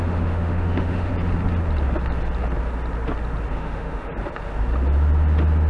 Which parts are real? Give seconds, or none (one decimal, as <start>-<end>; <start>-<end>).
1.1-3.5; 4.1-5.7